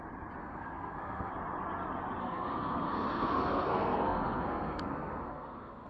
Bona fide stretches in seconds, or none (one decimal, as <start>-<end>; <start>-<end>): 0.0-0.4; 1.3-2.2